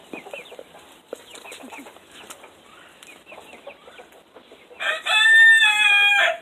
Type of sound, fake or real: real